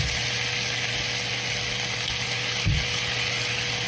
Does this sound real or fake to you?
real